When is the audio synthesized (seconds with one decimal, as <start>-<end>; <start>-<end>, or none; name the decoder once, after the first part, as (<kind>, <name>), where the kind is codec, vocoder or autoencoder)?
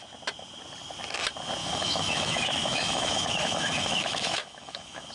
1.6-5.1 (autoencoder, DAC-VAE)